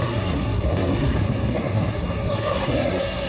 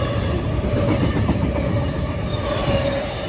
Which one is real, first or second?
second